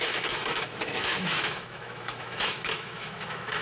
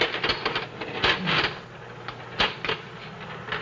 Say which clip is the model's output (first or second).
first